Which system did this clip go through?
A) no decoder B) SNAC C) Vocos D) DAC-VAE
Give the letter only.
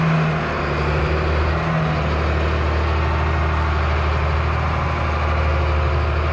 A